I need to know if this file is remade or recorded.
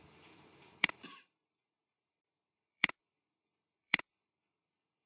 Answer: remade